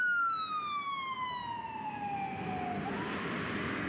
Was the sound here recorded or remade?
recorded